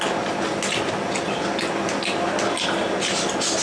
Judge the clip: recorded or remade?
recorded